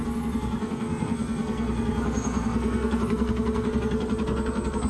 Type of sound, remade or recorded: remade